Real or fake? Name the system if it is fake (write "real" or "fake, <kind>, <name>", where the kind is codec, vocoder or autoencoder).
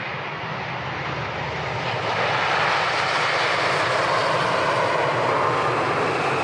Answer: real